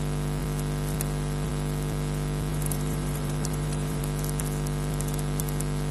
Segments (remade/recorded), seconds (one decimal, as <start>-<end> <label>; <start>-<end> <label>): 0.0-2.5 recorded; 2.5-4.0 remade; 4.0-5.9 recorded